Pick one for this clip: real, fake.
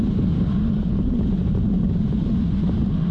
real